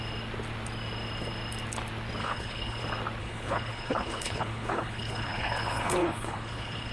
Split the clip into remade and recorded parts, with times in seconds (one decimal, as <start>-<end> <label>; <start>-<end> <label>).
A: 0.0-2.2 recorded; 2.2-2.8 remade; 2.8-3.2 recorded; 3.2-6.9 remade